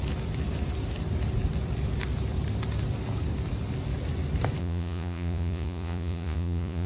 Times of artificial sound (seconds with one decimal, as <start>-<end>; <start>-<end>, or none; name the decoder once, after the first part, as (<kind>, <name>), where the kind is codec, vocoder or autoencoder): 4.6-6.9 (vocoder, Vocos)